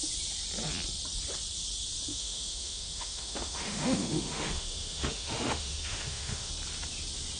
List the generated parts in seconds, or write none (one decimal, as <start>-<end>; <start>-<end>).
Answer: 2.1-6.5